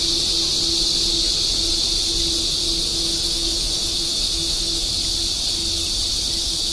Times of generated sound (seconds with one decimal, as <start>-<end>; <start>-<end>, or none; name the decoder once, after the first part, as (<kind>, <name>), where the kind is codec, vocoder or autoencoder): 2.9-4.9 (autoencoder, DAC-VAE)

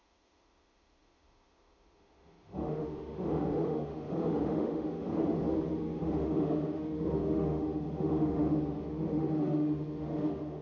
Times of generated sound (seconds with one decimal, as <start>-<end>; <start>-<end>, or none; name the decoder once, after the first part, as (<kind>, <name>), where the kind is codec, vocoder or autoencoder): 0.0-10.6 (autoencoder, DAC-VAE)

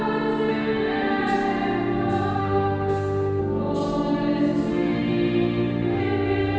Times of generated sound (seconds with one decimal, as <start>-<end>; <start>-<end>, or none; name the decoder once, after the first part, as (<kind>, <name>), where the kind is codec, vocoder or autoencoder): 0.5-1.2 (autoencoder, DAC-VAE); 2.4-3.4; 4.7-6.0

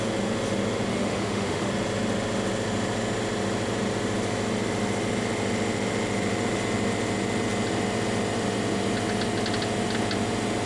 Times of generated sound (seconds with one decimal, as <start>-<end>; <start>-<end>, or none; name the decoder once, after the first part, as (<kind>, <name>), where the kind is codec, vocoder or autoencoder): 0.9-1.7 (autoencoder, DAC-VAE)

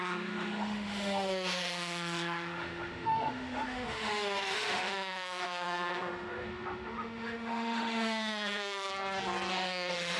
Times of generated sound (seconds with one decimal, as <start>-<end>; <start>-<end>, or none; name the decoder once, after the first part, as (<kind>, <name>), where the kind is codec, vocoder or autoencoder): 0.0-8.9 (autoencoder, DAC-VAE); 9.5-10.2